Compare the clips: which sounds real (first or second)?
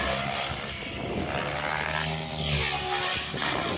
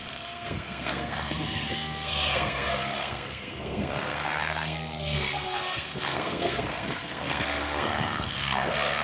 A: first